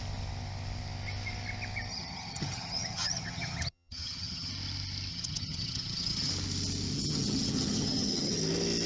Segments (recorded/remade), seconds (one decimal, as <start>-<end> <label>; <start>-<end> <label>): 0.0-1.9 recorded; 1.9-4.5 remade; 4.5-5.1 recorded; 5.1-6.3 remade; 6.3-6.9 recorded; 6.9-8.4 remade; 8.4-8.9 recorded